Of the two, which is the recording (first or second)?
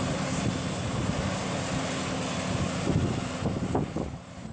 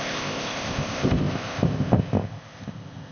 first